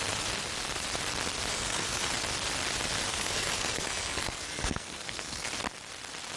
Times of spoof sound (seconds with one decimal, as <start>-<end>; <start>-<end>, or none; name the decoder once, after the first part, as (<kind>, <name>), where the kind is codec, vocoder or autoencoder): 1.5-2.1 (codec, SNAC); 3.1-5.5